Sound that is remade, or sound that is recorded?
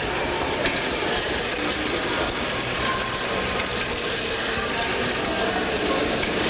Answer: recorded